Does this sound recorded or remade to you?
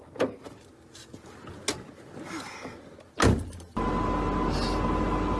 recorded